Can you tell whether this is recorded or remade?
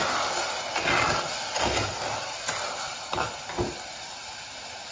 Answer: recorded